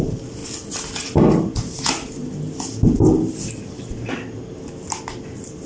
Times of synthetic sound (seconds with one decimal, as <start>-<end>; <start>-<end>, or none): none

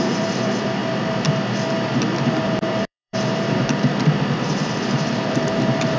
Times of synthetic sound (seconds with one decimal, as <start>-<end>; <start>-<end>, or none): 0.0-0.8; 1.7-3.9; 4.5-6.0

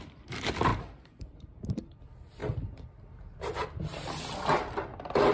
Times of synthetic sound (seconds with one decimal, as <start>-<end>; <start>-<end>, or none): 0.7-2.0

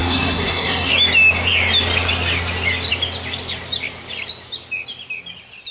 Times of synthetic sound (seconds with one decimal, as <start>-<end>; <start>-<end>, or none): 0.0-0.9

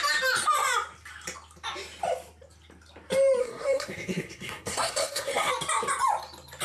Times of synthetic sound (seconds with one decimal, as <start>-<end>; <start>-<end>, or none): 3.4-5.5

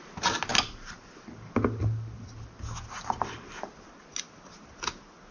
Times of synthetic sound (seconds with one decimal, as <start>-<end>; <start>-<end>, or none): none

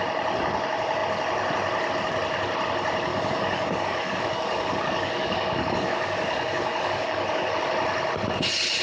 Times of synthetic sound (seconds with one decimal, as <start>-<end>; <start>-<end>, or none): 3.1-7.6

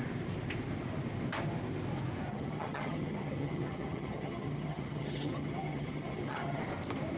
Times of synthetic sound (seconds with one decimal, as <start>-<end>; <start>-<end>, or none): 2.3-6.6